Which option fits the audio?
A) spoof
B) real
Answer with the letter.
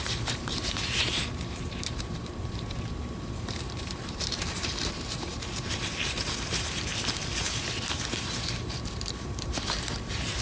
A